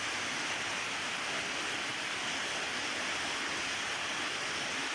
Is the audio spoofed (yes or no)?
no